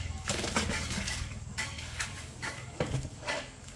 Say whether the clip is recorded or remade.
remade